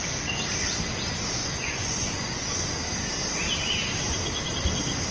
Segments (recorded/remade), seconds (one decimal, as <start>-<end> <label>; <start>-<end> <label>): 0.0-1.4 recorded; 1.4-2.7 remade; 2.7-5.1 recorded